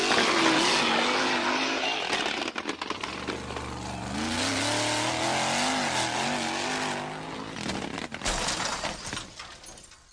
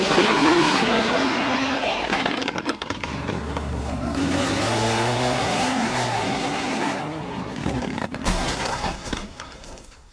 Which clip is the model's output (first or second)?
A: second